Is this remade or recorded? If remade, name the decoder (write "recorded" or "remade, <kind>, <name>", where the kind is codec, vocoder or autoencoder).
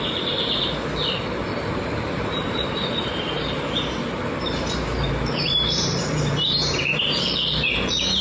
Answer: remade, vocoder, BigVGAN v2